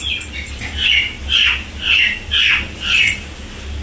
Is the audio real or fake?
real